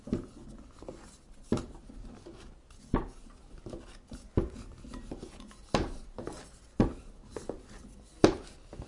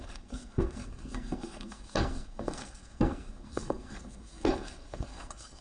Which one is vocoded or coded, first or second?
second